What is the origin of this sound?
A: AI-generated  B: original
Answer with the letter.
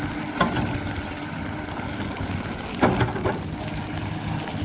B